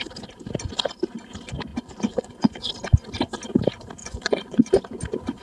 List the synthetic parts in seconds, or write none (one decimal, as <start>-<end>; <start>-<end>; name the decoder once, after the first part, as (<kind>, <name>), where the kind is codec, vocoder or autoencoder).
1.7-2.7 (vocoder, Vocos); 4.0-4.7